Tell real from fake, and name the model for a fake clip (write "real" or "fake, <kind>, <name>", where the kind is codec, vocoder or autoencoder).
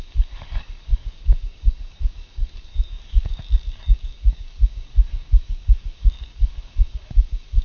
fake, codec, DAC